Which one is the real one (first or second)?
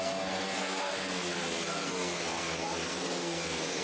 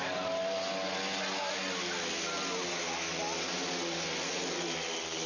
second